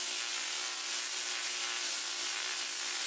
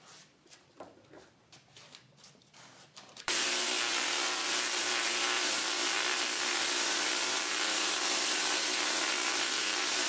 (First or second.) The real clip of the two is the first